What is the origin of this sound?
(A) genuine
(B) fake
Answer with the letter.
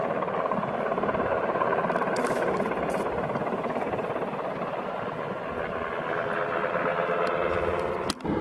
A